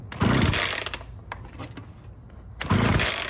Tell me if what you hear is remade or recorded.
recorded